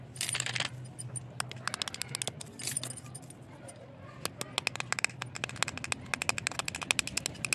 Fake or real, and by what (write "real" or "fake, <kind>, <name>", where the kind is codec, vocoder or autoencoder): real